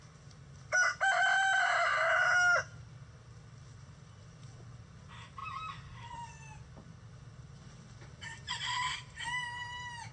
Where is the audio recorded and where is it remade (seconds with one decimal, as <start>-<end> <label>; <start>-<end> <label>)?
0.0-10.1 recorded